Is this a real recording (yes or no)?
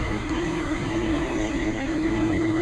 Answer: no